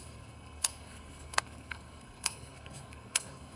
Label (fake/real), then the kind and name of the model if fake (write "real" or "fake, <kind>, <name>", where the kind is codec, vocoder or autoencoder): fake, codec, SNAC